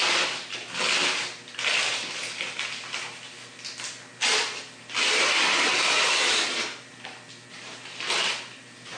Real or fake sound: real